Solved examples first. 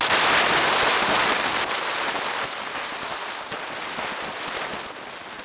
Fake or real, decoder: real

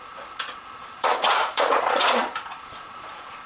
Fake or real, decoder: fake, vocoder, Vocos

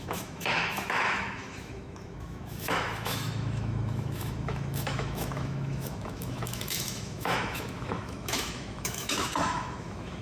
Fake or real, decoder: fake, autoencoder, DAC-VAE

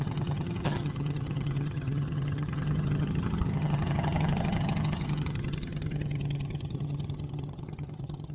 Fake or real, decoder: fake, vocoder, HiFi-GAN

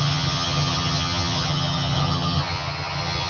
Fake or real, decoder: fake, vocoder, HiFi-GAN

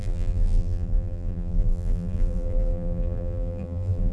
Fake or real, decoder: fake, vocoder, BigVGAN v2